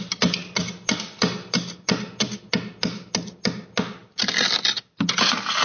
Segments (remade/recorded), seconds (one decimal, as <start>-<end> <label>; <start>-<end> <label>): 0.0-5.6 recorded